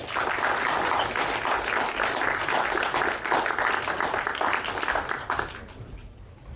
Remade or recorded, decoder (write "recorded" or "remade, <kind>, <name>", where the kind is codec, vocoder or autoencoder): recorded